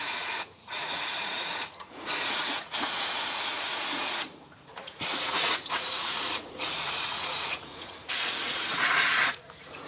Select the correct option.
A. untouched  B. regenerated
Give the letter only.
B